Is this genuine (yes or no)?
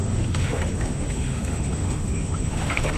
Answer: no